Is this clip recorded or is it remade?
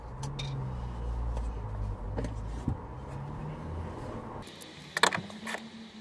recorded